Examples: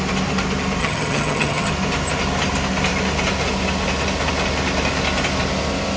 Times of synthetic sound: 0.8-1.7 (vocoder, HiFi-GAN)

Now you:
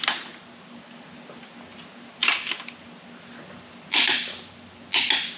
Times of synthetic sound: none

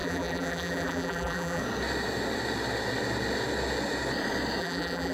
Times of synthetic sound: 0.0-1.6 (vocoder, BigVGAN v2); 4.6-5.1

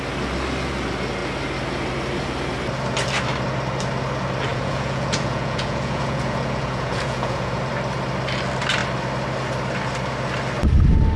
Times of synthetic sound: 4.5-7.6 (vocoder, Vocos)

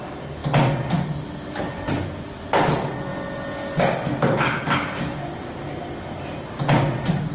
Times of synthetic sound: 0.0-0.4 (vocoder, BigVGAN v2); 1.6-3.1; 3.8-7.3